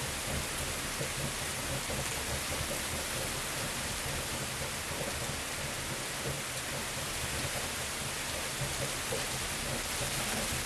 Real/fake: real